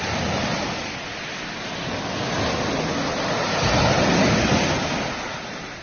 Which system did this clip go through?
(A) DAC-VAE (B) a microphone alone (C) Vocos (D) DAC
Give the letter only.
B